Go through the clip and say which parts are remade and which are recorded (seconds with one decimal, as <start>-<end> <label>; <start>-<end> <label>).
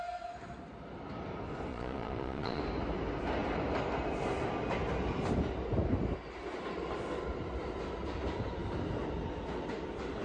0.0-1.7 recorded; 1.7-2.6 remade; 2.6-10.2 recorded